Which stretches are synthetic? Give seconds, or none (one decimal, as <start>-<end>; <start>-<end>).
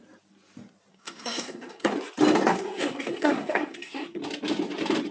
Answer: 0.9-1.9; 2.5-4.2